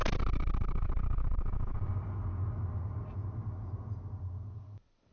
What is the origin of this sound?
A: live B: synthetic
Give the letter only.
A